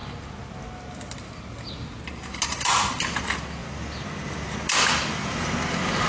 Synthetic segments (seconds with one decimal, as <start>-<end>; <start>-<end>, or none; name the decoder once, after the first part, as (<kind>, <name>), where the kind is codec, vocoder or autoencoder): none